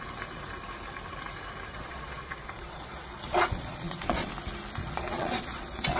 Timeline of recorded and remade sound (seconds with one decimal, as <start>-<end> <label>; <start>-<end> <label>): 0.0-1.7 recorded; 1.7-4.3 remade; 4.3-4.8 recorded; 4.8-6.0 remade